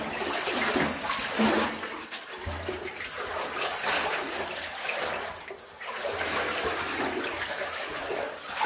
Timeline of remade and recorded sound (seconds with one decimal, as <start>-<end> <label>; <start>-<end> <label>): 0.0-8.7 recorded

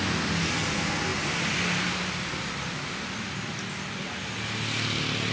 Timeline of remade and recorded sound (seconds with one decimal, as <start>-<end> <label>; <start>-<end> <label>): 0.0-5.3 recorded

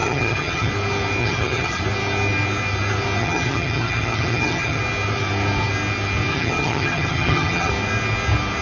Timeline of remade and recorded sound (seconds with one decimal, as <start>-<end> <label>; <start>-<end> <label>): 0.0-0.7 remade; 0.7-1.2 recorded; 1.2-1.8 remade; 1.8-3.2 recorded; 3.2-4.8 remade; 4.8-6.3 recorded; 6.3-7.7 remade; 7.7-8.6 recorded

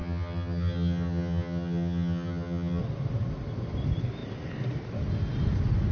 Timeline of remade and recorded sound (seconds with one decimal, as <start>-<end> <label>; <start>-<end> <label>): 0.0-2.8 remade; 2.8-5.9 recorded

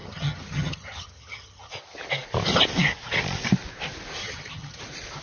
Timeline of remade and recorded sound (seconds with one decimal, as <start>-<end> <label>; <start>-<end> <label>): 0.0-1.7 remade; 1.7-4.2 recorded; 4.2-4.8 remade; 4.8-5.2 recorded

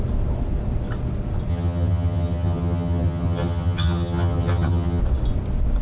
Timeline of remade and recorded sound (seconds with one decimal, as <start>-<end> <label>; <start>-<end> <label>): 0.0-1.5 recorded; 1.5-5.0 remade; 5.0-5.8 recorded

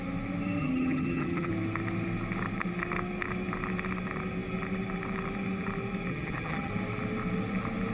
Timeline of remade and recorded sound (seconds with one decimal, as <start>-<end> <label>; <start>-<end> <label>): 0.0-0.6 recorded; 0.6-1.5 remade; 1.5-6.1 recorded; 6.1-6.7 remade; 6.7-7.9 recorded

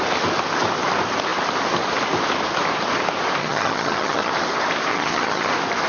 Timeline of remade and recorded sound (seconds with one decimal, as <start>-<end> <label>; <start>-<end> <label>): 0.0-3.4 recorded; 3.4-4.3 remade; 4.3-4.9 recorded; 4.9-5.5 remade; 5.5-5.9 recorded